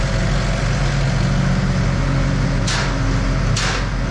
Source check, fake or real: real